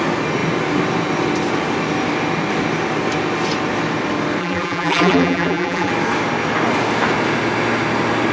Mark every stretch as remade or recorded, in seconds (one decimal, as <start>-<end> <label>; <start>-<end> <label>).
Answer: 0.0-4.4 recorded; 4.4-5.9 remade; 5.9-8.3 recorded